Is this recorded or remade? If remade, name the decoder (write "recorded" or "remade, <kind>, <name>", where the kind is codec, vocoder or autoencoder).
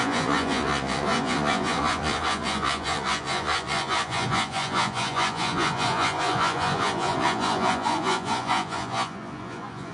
remade, vocoder, Vocos